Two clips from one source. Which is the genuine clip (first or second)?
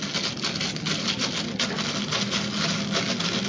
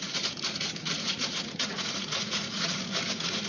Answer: first